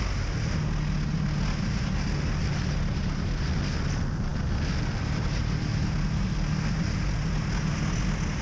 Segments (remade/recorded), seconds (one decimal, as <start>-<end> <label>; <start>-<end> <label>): 0.0-8.4 recorded